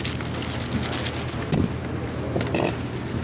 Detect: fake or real real